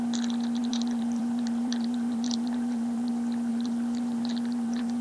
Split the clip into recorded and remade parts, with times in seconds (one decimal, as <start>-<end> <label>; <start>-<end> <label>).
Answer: 0.0-0.6 recorded; 0.6-3.1 remade; 3.1-3.5 recorded; 3.5-5.0 remade